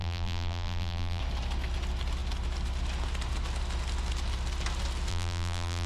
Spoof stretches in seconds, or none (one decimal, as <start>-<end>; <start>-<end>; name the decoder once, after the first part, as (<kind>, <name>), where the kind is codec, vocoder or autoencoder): 0.0-1.2 (vocoder, BigVGAN v2); 5.1-5.9